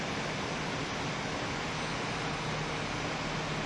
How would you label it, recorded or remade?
recorded